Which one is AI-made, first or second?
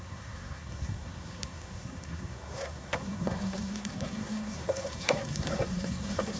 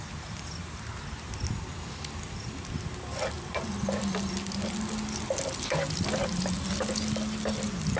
first